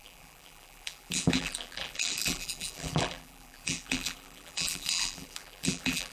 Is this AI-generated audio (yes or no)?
yes